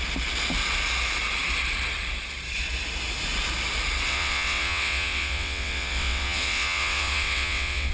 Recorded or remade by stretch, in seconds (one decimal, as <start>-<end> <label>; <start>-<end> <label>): 0.0-4.1 recorded; 4.1-7.9 remade

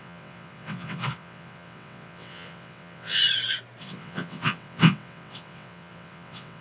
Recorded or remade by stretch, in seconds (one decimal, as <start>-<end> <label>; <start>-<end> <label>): 0.0-3.2 remade; 3.2-3.8 recorded; 3.8-6.6 remade

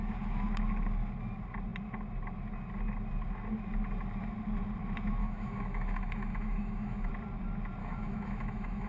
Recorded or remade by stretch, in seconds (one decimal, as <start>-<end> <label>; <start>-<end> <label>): 0.0-5.2 recorded; 5.2-7.1 remade; 7.1-7.8 recorded; 7.8-8.9 remade

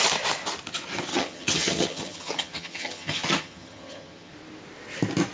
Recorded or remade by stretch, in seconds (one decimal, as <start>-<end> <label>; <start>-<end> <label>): 0.0-1.1 recorded; 1.1-4.3 remade; 4.3-5.3 recorded

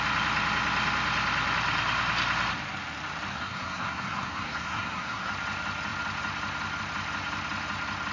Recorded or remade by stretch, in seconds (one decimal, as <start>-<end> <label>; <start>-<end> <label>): 0.0-3.3 recorded; 3.3-5.3 remade; 5.3-8.1 recorded

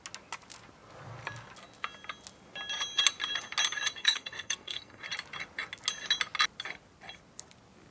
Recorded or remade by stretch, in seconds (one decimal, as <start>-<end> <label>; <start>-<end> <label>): 0.0-4.0 recorded; 4.0-5.0 remade; 5.0-7.9 recorded

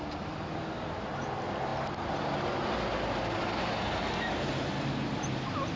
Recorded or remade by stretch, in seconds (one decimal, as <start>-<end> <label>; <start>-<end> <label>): 0.0-5.8 recorded

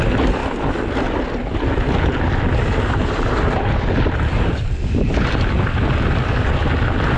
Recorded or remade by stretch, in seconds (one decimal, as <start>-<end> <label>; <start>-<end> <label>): 0.0-7.2 recorded